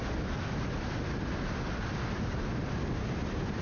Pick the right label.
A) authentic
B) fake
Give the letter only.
A